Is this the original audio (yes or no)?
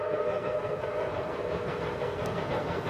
no